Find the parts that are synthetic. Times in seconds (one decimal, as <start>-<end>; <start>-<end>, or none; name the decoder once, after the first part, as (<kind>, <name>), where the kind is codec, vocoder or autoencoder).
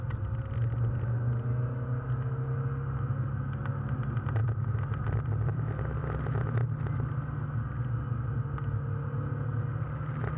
4.4-5.6 (vocoder, BigVGAN v2)